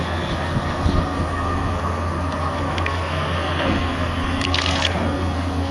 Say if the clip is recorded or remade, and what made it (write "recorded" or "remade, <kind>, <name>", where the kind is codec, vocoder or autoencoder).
remade, codec, SNAC